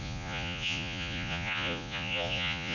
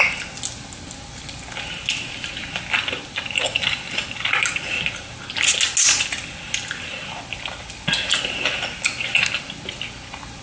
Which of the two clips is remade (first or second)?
first